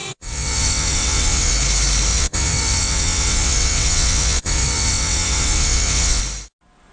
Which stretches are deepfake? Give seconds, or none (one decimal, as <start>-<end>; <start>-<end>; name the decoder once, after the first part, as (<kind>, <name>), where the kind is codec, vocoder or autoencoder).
0.0-1.5 (vocoder, WaveNeXt); 2.1-6.2